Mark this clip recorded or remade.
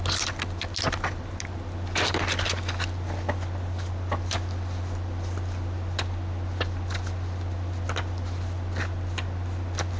recorded